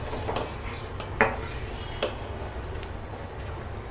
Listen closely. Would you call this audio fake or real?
real